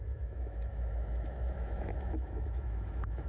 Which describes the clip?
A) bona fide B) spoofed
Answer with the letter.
B